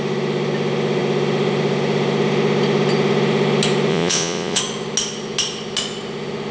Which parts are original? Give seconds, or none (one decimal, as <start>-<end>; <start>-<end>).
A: 0.0-3.9; 4.6-6.5